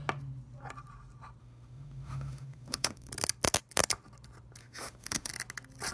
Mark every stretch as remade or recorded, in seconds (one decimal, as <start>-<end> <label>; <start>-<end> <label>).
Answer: 0.0-1.4 recorded; 1.4-3.1 remade; 3.1-4.6 recorded; 4.6-5.3 remade; 5.3-5.9 recorded